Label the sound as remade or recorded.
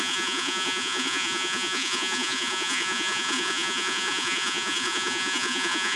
remade